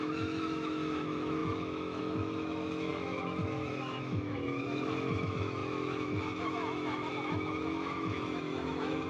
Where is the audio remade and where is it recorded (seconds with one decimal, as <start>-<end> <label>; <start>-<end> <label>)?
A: 0.0-9.1 remade